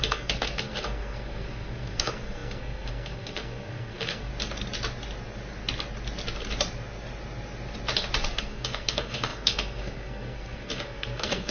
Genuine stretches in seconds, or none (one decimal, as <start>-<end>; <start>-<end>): 4.3-8.3